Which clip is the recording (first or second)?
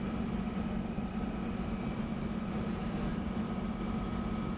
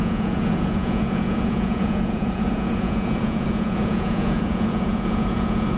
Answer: first